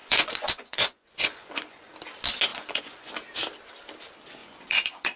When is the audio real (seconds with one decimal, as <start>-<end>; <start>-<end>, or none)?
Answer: 1.9-2.5; 3.1-4.4